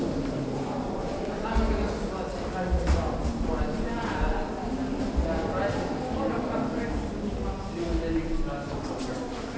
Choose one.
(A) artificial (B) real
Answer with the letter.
B